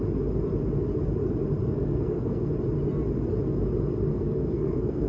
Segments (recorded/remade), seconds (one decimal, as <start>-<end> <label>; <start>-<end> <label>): 0.0-1.6 recorded; 1.6-2.5 remade; 2.5-4.1 recorded; 4.1-5.1 remade